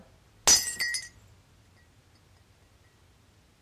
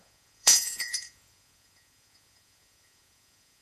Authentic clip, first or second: first